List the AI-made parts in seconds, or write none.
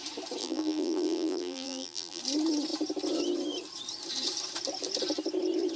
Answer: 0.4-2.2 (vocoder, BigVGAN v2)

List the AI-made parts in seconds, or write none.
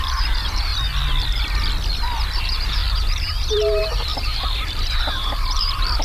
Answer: 0.0-0.7 (vocoder, BigVGAN v2); 2.4-6.0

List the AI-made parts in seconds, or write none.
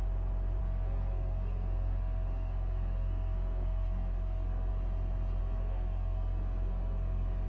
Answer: 0.6-4.7 (codec, SNAC); 5.4-7.5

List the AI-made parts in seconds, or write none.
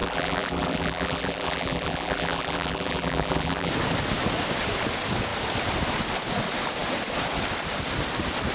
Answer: 0.0-3.7 (vocoder, BigVGAN v2)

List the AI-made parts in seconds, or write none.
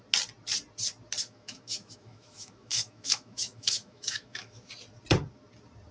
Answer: 1.2-4.7 (autoencoder, DAC-VAE)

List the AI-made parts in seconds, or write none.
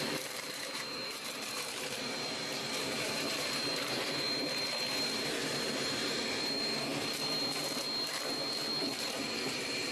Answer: 0.0-6.9 (vocoder, BigVGAN v2); 8.9-9.9